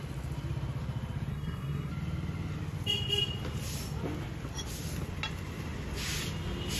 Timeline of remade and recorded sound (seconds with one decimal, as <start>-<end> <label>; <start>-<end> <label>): 0.0-1.3 recorded; 1.3-1.9 remade; 1.9-6.8 recorded